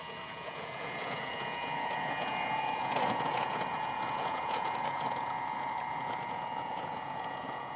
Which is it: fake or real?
fake